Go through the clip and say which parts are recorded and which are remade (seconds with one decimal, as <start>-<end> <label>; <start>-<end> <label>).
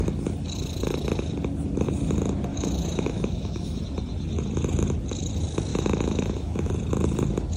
0.0-2.5 recorded; 2.5-3.8 remade; 3.8-5.7 recorded; 5.7-6.7 remade; 6.7-7.6 recorded